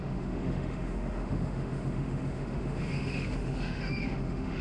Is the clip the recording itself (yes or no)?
no